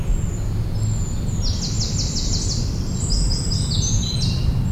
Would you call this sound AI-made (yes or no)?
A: no